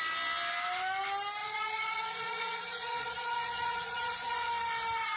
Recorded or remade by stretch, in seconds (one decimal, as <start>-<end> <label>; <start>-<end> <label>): 0.0-1.4 recorded; 1.4-4.5 remade; 4.5-5.2 recorded